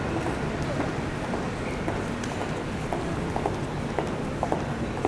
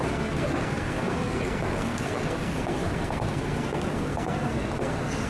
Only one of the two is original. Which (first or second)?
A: first